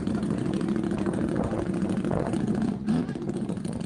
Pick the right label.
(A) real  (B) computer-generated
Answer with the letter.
B